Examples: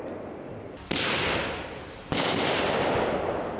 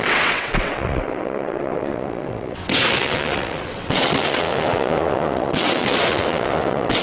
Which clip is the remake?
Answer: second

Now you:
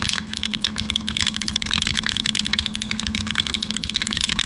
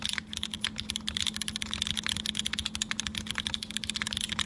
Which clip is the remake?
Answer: first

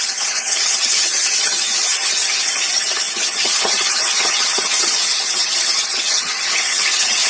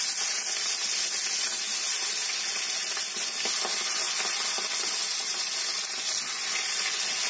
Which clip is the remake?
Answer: first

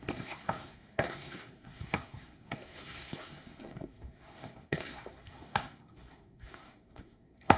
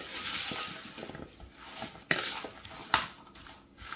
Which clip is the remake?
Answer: first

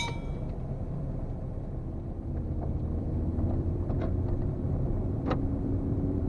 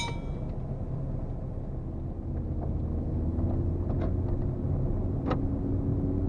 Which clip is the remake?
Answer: first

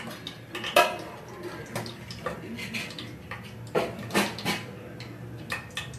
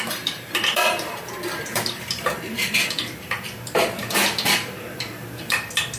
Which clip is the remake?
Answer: second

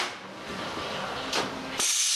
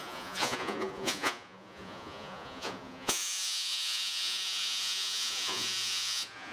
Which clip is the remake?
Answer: second